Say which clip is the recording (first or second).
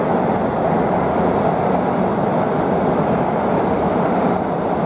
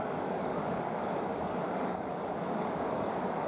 first